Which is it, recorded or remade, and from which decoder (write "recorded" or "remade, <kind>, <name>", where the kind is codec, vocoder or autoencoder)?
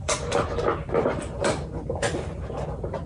remade, vocoder, BigVGAN v2